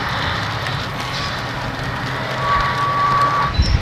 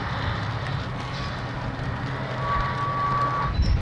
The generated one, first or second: first